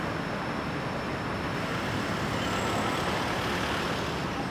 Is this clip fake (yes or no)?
no